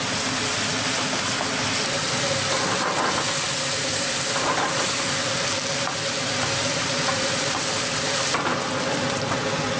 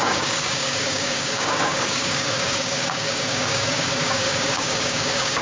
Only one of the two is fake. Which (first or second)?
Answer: second